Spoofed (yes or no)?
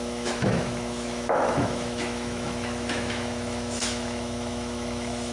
yes